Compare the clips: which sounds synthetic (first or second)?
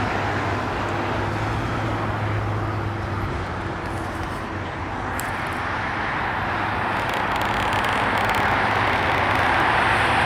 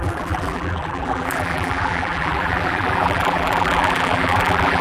second